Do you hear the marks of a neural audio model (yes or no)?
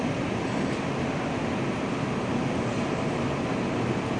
no